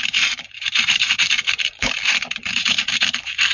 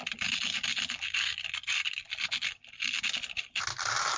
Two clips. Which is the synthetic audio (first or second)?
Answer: first